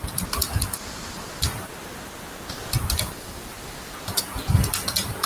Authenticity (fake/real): real